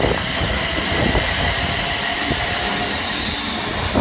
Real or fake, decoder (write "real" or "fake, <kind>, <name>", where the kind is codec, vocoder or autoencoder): real